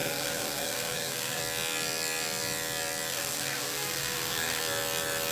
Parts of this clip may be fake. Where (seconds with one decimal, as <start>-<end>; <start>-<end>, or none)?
0.0-1.4; 3.1-4.6